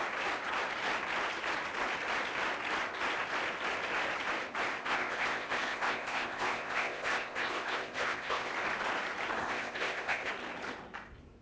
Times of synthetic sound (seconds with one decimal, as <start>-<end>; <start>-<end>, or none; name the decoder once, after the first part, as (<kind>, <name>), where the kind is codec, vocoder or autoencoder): 4.8-8.5 (codec, ZipCodec); 9.4-10.3